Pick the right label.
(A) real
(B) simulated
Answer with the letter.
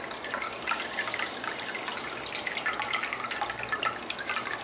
A